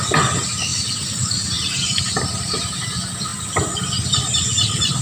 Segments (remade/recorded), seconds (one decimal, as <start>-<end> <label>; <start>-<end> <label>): 0.0-5.0 recorded